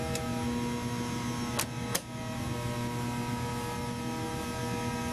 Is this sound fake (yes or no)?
no